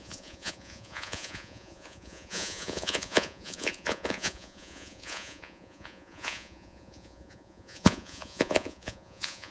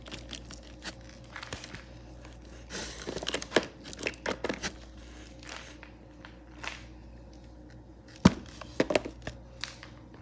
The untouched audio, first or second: second